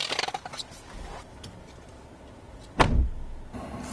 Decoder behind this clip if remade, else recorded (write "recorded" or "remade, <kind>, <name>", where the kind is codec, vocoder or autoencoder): recorded